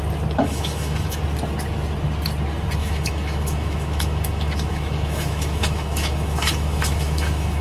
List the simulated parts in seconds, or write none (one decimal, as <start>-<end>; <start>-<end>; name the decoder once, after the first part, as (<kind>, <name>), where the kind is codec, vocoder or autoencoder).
0.4-1.2 (autoencoder, DAC-VAE); 2.8-7.6